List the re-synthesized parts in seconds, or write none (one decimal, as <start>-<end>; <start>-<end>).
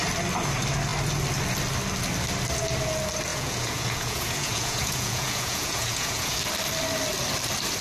3.3-6.4